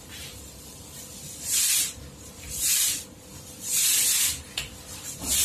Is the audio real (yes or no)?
no